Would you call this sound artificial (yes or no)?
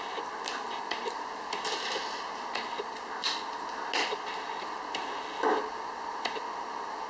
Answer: no